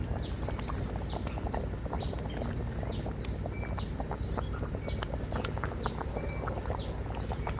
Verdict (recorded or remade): recorded